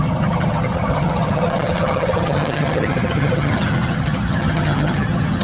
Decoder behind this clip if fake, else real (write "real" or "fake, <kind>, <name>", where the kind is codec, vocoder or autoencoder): fake, vocoder, HiFi-GAN